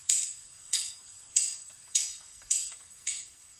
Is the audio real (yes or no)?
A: no